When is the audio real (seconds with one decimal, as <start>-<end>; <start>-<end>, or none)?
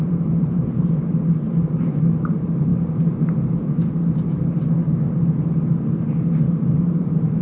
2.7-6.4